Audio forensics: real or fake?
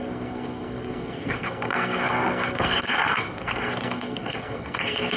fake